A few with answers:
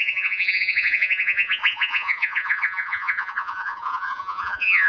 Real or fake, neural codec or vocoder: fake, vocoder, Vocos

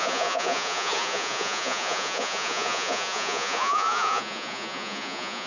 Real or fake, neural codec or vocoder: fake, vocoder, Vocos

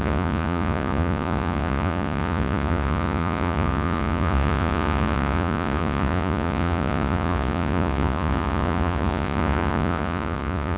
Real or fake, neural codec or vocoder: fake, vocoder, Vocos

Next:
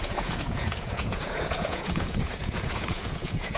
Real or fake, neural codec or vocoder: fake, vocoder, Vocos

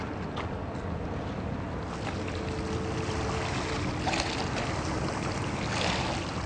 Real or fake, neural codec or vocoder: real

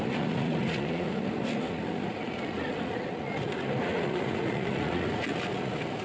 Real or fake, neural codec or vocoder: fake, vocoder, Vocos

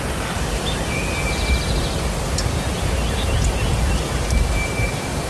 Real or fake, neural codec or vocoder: real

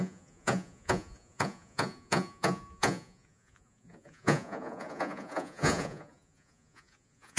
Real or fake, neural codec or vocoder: fake, vocoder, Vocos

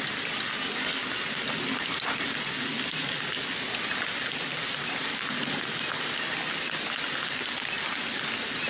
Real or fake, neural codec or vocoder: real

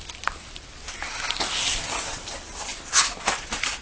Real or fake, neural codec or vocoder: real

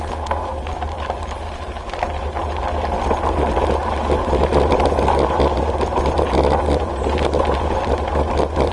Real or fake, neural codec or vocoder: real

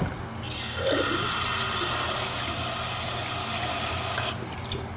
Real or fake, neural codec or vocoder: real